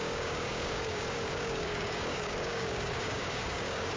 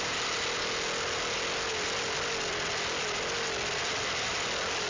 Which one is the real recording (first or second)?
second